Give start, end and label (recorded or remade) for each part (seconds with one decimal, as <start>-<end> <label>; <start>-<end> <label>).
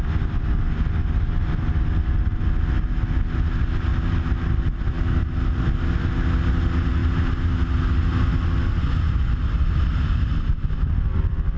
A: 0.0-11.6 recorded